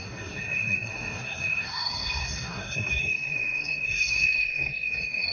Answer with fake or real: fake